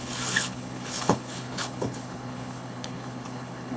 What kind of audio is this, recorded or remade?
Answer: remade